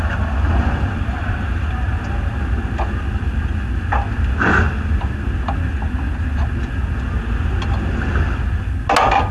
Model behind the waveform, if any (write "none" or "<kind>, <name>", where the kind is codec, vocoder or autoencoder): none